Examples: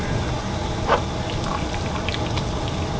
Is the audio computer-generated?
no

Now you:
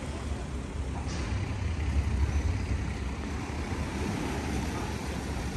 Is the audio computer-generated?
no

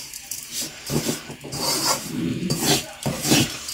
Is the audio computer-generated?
yes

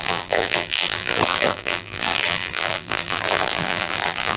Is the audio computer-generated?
yes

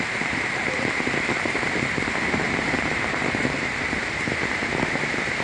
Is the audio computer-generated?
yes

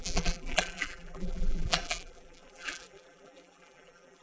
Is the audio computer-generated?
yes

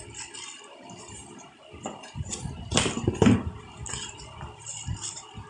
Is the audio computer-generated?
yes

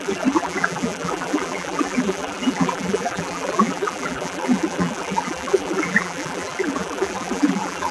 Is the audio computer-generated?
yes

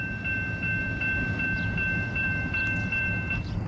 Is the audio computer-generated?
yes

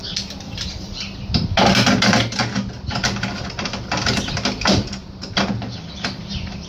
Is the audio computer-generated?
yes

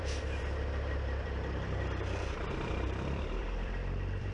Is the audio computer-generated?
yes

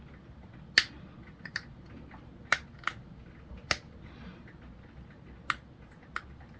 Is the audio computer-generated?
no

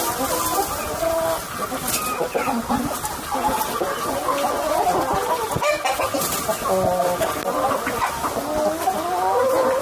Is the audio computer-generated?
no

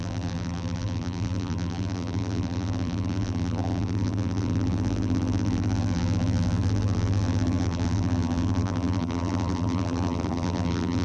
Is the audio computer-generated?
yes